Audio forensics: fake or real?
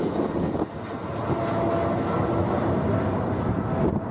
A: real